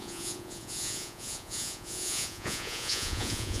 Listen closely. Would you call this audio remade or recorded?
remade